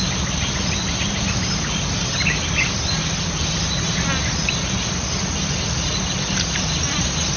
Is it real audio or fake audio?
real